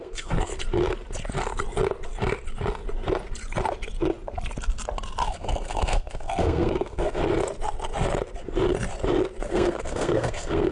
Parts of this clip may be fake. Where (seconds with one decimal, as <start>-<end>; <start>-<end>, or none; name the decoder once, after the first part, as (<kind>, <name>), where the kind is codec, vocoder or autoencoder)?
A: 0.0-0.5 (codec, SNAC); 5.3-7.2; 9.5-10.7